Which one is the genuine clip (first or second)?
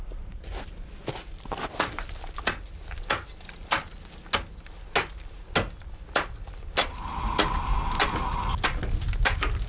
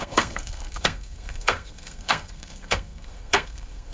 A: first